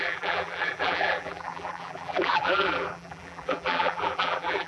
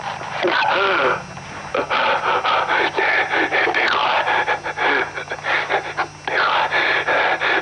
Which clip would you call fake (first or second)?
first